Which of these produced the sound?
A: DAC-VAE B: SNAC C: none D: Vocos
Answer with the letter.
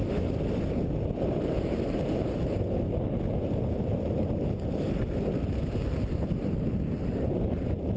C